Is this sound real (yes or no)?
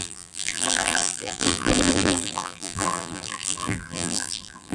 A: no